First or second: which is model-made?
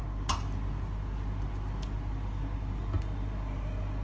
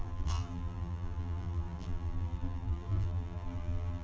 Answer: second